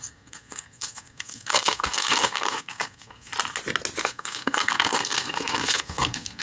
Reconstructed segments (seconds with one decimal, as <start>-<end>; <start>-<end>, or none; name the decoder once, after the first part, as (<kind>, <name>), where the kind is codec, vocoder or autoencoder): 0.0-3.3 (codec, SNAC); 4.0-6.4